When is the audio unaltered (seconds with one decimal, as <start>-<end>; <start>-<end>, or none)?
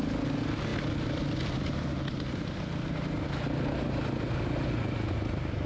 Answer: 0.0-5.7